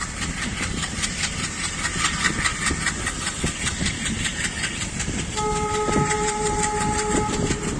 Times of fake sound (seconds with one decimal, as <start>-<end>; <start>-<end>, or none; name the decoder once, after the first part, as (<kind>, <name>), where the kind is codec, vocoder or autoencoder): none